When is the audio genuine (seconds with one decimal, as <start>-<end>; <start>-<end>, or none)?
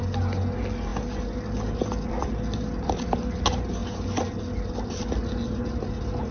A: 0.0-6.3